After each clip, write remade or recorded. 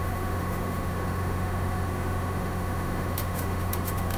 remade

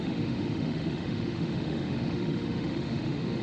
remade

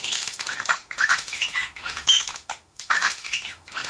remade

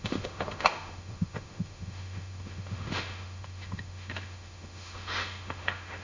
remade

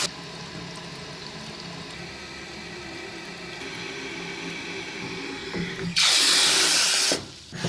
recorded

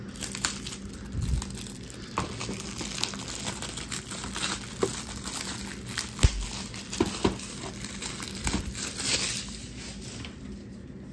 recorded